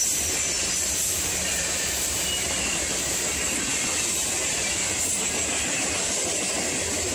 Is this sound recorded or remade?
recorded